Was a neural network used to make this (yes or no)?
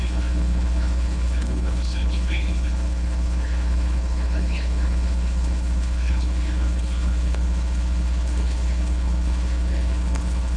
yes